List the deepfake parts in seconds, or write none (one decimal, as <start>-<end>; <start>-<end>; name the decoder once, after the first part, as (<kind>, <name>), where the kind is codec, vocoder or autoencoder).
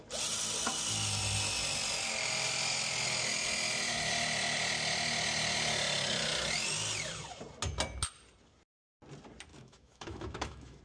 9.5-10.8 (autoencoder, DAC-VAE)